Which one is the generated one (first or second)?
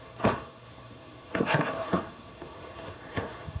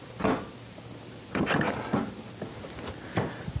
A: first